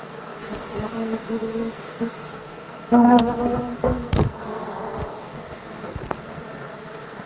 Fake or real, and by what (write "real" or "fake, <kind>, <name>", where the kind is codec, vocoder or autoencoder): fake, codec, SNAC